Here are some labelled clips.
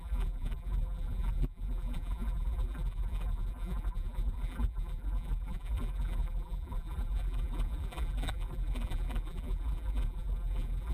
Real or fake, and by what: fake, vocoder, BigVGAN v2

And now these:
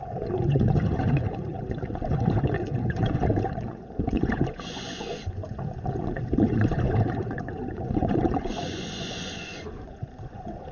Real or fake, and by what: fake, vocoder, Vocos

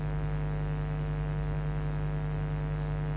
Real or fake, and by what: real